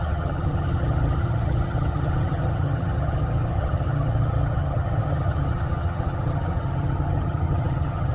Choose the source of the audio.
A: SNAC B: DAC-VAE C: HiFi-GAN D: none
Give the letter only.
C